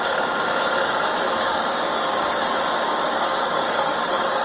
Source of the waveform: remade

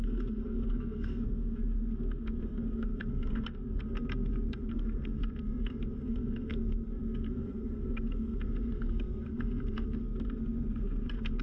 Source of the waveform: remade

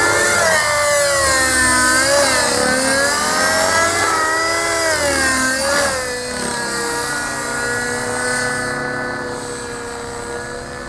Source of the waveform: recorded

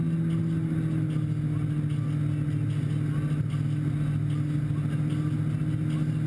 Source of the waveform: recorded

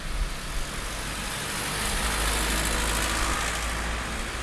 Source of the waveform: recorded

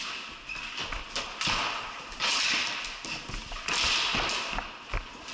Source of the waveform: recorded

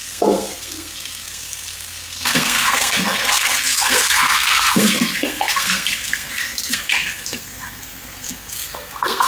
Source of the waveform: remade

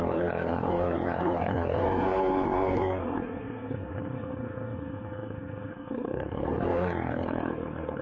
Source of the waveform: remade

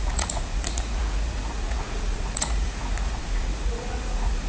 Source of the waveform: remade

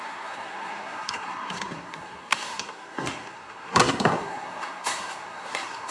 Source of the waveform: remade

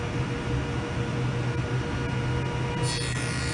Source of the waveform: recorded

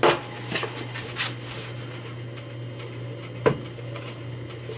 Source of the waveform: recorded